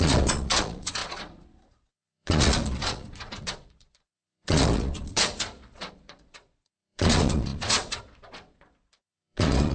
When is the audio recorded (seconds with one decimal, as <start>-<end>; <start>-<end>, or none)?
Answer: none